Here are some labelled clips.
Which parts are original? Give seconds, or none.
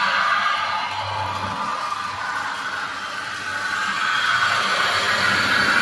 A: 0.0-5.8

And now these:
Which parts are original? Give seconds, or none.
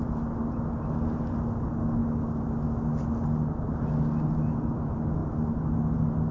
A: 0.0-6.3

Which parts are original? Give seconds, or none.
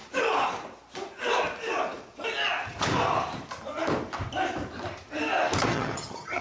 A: 0.0-5.7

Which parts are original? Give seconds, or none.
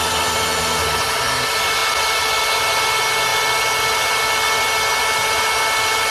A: 0.0-6.1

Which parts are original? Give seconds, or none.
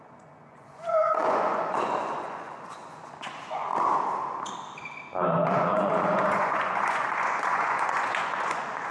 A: 3.7-5.3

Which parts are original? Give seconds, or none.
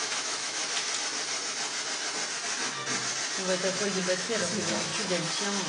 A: 0.6-4.0; 4.9-5.7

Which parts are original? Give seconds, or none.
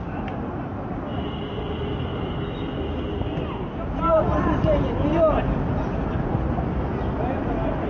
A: 0.0-7.9